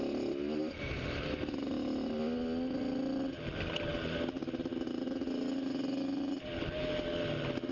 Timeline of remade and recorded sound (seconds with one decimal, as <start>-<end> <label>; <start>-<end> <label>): 0.0-7.7 recorded